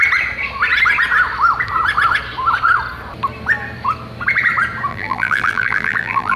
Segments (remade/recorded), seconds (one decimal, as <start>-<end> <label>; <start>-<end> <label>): 0.0-4.9 recorded; 4.9-6.4 remade